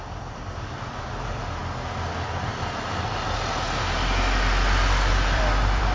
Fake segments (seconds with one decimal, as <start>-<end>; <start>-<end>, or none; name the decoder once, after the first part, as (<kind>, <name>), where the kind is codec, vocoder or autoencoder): 0.0-1.6 (vocoder, BigVGAN v2); 5.1-5.9